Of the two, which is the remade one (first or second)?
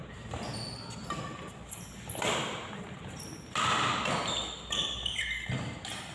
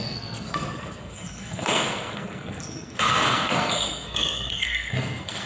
second